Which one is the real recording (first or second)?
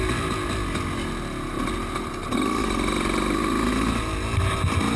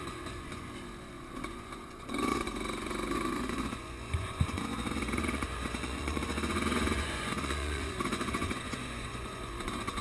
first